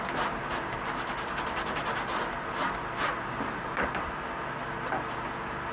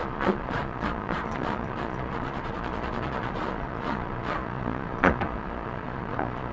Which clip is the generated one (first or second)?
second